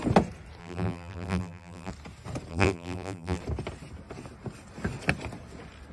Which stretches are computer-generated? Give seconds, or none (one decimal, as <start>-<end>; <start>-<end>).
0.6-1.9; 2.5-3.4